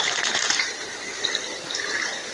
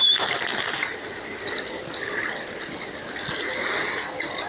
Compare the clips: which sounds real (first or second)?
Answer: second